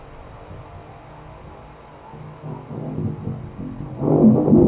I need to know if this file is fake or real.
real